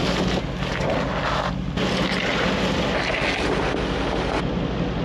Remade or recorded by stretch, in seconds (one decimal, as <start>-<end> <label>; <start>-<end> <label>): 0.0-5.0 recorded

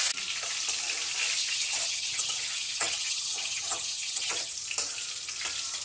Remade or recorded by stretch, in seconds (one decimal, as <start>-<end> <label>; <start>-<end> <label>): 0.0-1.4 recorded; 1.4-4.5 remade; 4.5-5.8 recorded

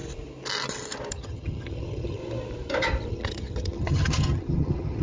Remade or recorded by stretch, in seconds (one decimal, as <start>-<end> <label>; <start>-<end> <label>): 0.0-1.1 recorded; 1.1-2.2 remade; 2.2-3.1 recorded; 3.1-5.0 remade

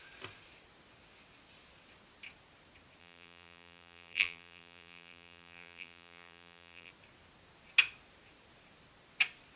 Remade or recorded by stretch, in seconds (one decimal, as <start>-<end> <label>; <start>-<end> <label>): 0.0-3.0 recorded; 3.0-6.9 remade; 6.9-9.6 recorded

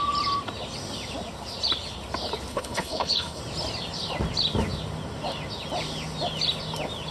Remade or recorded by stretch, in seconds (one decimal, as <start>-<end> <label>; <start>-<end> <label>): 0.0-2.5 recorded; 2.5-3.4 remade; 3.4-7.1 recorded